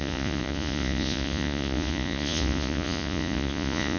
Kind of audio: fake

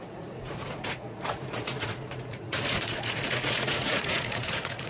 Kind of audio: fake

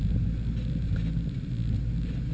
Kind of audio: real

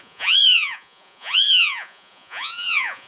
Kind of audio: fake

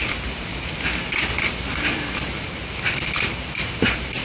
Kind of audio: real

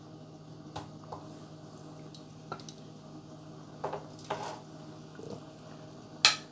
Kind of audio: real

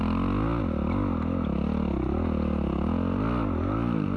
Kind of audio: real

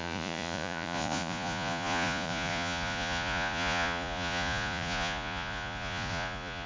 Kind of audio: fake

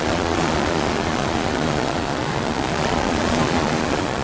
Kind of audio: fake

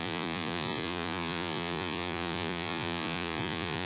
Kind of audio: fake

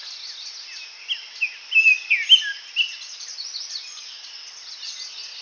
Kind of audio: real